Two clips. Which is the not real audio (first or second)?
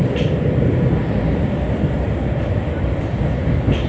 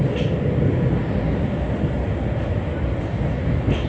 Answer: first